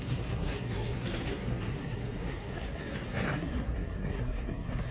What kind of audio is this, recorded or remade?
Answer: remade